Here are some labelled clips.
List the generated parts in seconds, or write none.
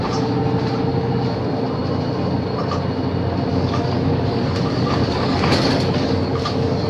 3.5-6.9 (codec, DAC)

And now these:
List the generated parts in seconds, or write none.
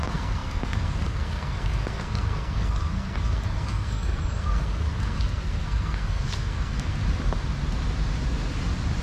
0.0-7.0 (codec, SNAC)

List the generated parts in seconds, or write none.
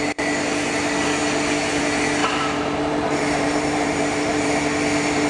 2.2-4.5 (vocoder, BigVGAN v2)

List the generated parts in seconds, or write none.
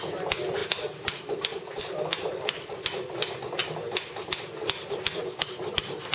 none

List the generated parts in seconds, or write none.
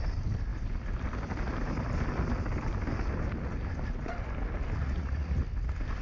4.8-5.4 (vocoder, Vocos)